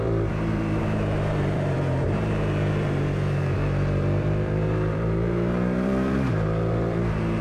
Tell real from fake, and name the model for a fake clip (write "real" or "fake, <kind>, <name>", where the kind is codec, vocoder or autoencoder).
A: fake, vocoder, BigVGAN v2